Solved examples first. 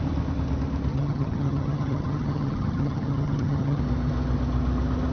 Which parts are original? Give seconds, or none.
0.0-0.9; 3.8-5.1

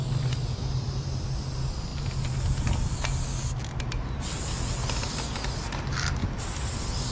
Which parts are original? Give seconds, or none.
0.0-7.1

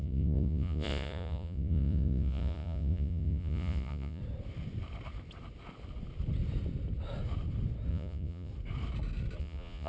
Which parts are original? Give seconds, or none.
4.2-7.9; 8.5-9.4

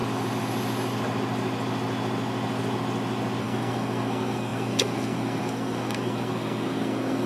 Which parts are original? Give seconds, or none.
0.0-3.4